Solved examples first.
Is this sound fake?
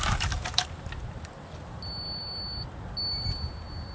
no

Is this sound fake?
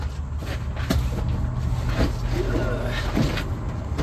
no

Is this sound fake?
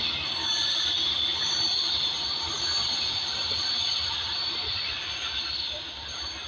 no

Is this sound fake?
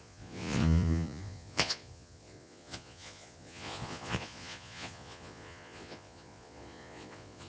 yes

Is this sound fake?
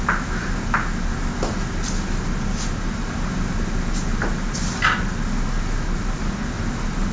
no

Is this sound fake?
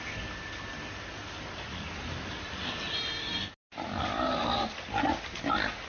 no